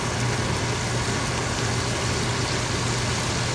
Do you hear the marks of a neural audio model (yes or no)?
no